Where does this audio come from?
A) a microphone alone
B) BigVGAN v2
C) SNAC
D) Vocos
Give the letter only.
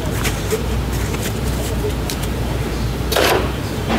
B